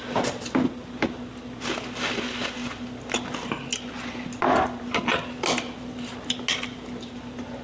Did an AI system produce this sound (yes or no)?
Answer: no